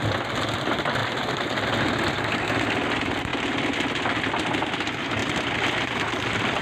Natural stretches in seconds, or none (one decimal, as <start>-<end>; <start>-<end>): 0.0-6.6